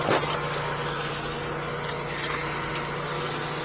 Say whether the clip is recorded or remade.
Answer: recorded